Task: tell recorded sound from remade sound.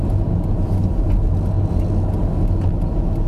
recorded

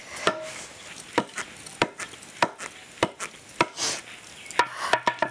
recorded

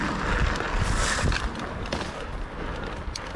recorded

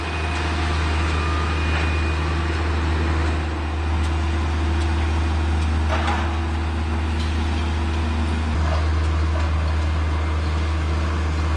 recorded